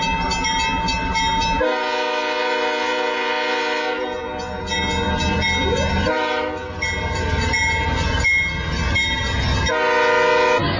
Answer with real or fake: real